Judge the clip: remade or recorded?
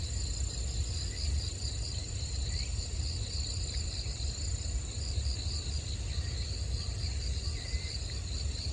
recorded